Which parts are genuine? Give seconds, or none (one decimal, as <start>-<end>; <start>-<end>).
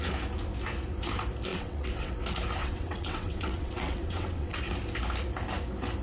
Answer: 0.0-1.5; 2.1-2.6; 4.6-6.0